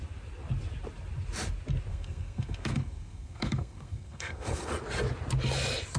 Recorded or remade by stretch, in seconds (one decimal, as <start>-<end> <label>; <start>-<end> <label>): 0.0-1.9 recorded; 1.9-4.7 remade; 4.7-6.0 recorded